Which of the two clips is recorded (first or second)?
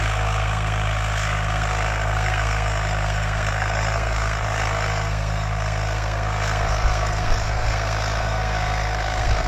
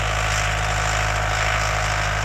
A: second